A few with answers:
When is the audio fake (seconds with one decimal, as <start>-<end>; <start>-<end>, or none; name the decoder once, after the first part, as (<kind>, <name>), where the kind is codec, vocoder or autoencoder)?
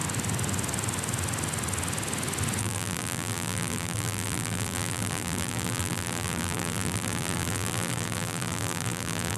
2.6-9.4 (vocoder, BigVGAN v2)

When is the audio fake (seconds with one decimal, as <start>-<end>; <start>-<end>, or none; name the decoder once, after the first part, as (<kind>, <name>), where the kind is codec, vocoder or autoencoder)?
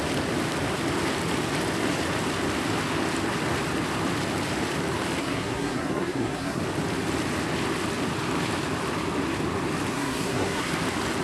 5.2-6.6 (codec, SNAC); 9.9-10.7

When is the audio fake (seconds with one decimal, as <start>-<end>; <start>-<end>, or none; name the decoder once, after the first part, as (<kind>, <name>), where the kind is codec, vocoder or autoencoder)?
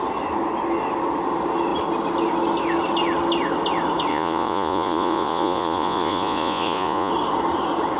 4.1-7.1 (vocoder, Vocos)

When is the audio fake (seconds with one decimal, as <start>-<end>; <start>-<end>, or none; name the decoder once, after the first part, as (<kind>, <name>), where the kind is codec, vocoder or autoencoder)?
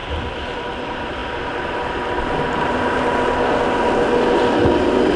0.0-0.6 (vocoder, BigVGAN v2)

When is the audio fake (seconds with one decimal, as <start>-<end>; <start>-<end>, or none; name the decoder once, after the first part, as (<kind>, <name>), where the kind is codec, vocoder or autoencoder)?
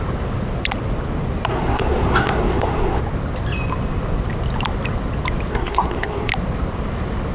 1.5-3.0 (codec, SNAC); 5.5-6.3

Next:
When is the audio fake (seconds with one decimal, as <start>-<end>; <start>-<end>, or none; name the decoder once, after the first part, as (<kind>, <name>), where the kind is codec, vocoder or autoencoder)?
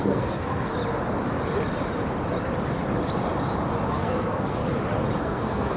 0.0-0.7 (codec, SNAC); 3.9-4.6; 5.2-5.8